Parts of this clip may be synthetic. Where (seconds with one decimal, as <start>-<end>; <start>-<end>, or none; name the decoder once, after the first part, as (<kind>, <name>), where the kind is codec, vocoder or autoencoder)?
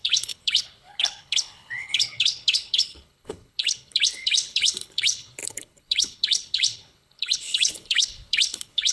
0.0-8.9 (codec, HILCodec)